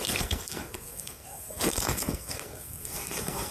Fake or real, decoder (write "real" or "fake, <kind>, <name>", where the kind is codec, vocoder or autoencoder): fake, codec, SNAC